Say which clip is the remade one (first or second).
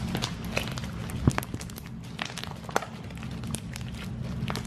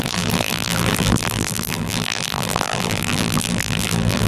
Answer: second